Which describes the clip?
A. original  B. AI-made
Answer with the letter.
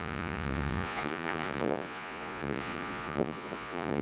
B